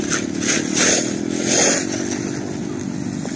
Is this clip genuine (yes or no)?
yes